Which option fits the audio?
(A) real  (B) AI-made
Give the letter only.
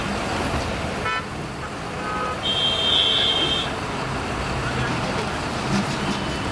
A